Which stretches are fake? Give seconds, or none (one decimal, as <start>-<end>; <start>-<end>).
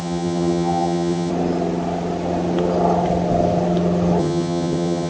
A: 0.0-1.3; 4.2-5.1